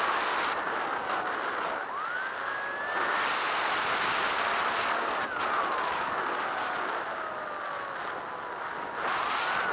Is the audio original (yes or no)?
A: yes